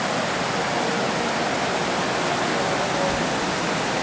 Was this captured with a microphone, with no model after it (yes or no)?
yes